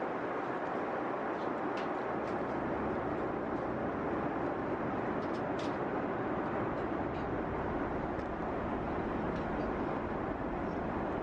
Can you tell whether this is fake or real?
real